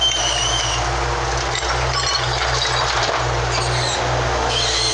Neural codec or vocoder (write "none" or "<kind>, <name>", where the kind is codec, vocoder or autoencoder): none